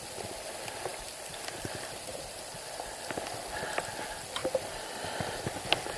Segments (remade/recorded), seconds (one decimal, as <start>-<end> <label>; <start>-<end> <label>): 0.0-0.9 recorded; 0.9-3.8 remade; 3.8-4.4 recorded; 4.4-5.6 remade; 5.6-6.0 recorded